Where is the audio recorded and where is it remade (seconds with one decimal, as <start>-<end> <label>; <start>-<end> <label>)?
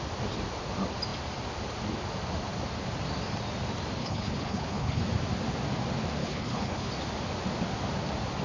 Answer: 0.0-4.0 recorded; 4.0-5.0 remade; 5.0-6.2 recorded; 6.2-6.9 remade; 6.9-8.4 recorded